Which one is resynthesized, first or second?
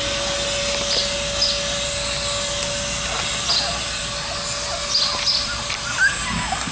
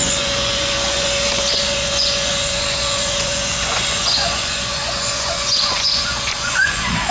second